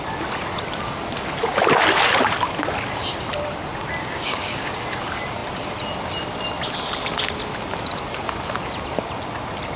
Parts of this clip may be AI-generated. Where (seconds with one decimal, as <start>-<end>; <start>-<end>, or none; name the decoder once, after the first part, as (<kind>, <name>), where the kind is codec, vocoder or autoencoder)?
4.0-4.7 (codec, DAC)